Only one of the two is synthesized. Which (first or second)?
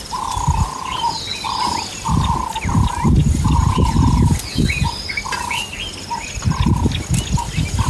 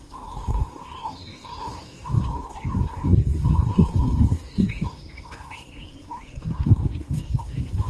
second